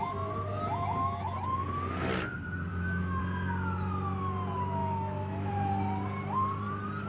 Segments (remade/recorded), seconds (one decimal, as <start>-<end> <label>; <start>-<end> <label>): 0.0-2.7 recorded; 2.7-3.2 remade; 3.2-4.8 recorded; 4.8-5.5 remade; 5.5-7.1 recorded